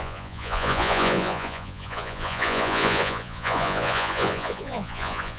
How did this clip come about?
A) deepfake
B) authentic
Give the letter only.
A